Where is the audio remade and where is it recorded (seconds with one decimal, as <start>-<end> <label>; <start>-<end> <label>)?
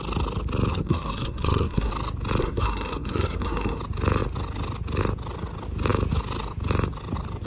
0.0-0.7 recorded; 0.7-1.9 remade; 1.9-2.4 recorded; 2.4-3.8 remade; 3.8-7.5 recorded